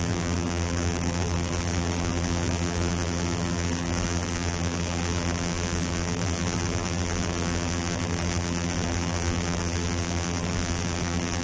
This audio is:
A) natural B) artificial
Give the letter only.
B